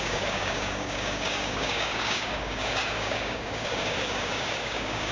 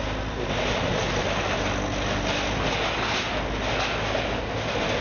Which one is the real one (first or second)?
second